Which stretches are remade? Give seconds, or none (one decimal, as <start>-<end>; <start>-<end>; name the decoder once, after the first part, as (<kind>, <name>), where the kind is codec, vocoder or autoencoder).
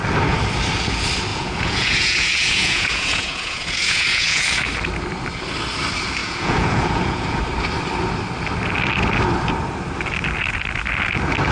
1.3-4.6 (vocoder, Vocos); 6.2-7.4